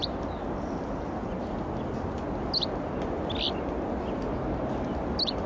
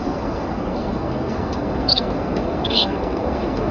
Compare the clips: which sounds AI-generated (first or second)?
second